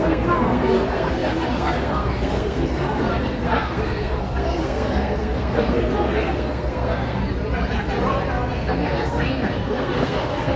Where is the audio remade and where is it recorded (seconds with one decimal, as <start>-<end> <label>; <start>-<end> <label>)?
0.0-7.2 remade; 7.2-8.3 recorded; 8.3-10.6 remade